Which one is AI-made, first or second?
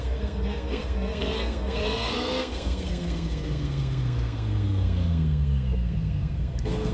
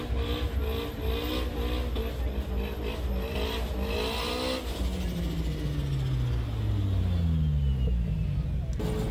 first